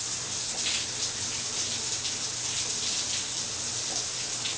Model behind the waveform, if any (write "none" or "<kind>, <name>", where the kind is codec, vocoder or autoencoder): none